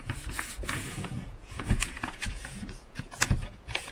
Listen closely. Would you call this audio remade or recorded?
remade